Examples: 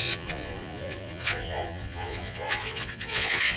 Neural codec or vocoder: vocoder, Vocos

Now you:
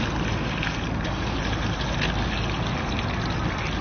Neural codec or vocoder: none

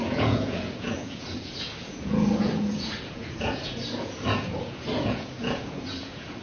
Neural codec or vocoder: vocoder, Vocos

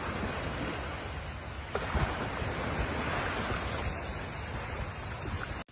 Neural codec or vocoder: none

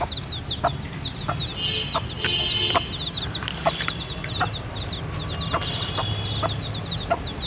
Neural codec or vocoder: none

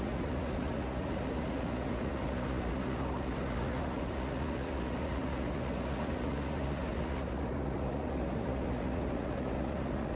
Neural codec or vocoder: vocoder, Vocos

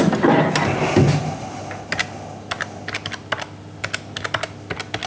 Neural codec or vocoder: none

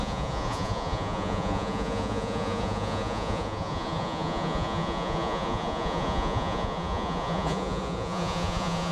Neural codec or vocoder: vocoder, Vocos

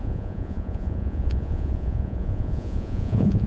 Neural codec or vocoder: vocoder, Vocos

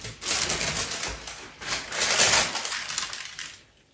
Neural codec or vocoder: none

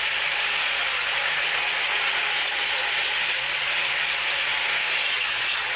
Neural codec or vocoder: none